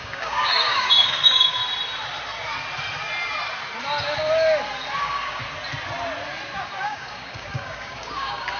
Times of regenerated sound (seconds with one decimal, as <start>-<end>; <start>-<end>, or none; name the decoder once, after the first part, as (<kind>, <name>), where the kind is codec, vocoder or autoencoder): 0.0-1.6 (codec, DAC); 5.0-5.4; 6.6-8.6